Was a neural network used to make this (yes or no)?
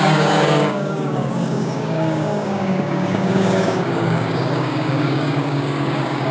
yes